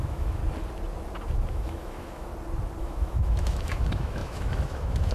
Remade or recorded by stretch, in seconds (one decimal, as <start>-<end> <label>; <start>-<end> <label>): 0.0-0.4 remade; 0.4-1.5 recorded; 1.5-2.3 remade; 2.3-2.8 recorded; 2.8-5.1 remade